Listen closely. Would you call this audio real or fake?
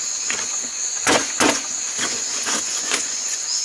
fake